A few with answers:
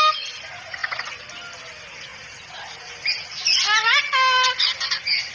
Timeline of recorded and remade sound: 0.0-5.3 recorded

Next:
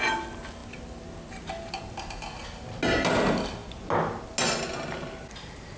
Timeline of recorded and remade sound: 0.0-5.8 recorded

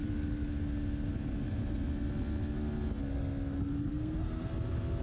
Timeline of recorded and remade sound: 0.0-3.9 recorded; 3.9-4.5 remade; 4.5-5.0 recorded

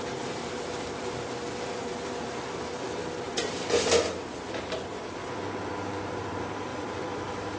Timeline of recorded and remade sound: 0.0-3.0 remade; 3.0-4.2 recorded; 4.2-5.2 remade; 5.2-6.0 recorded; 6.0-7.6 remade